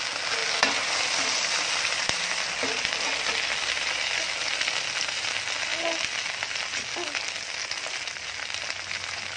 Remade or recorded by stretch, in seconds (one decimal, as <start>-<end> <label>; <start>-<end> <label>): 0.0-9.4 recorded